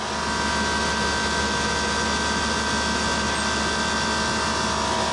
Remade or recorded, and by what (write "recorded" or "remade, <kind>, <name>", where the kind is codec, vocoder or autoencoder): recorded